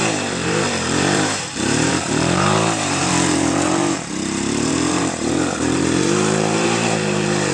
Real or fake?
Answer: fake